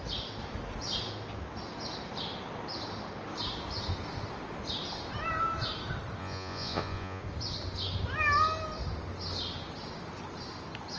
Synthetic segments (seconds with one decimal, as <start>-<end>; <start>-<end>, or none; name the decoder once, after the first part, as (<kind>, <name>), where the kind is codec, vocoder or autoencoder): 6.2-7.2 (vocoder, Vocos)